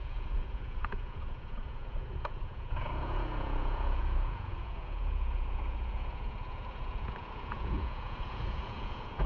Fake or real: fake